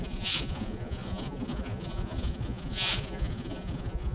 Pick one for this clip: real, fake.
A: fake